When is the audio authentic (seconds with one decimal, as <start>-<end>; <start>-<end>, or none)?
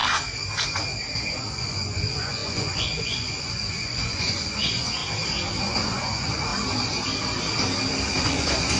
0.0-1.3; 5.0-5.6; 6.5-8.2